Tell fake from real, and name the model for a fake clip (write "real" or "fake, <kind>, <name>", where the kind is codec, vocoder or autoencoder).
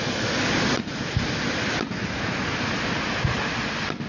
real